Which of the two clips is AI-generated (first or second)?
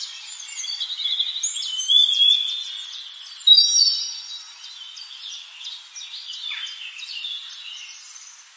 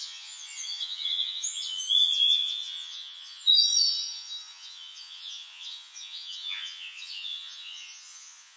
second